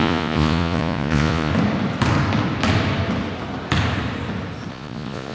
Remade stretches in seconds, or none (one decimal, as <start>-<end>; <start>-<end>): 0.0-1.5; 4.7-5.3